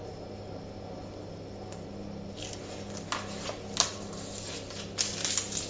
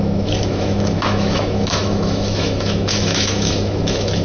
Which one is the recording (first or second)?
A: first